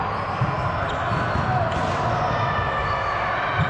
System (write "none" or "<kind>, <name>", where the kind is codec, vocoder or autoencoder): none